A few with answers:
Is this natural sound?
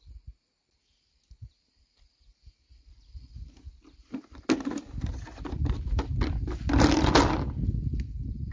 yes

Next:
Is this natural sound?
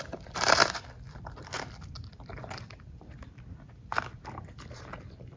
no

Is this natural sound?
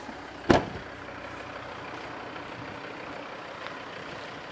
yes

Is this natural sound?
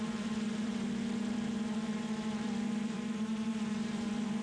no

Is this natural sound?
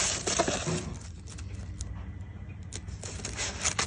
yes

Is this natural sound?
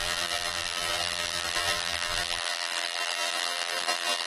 no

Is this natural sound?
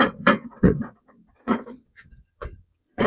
no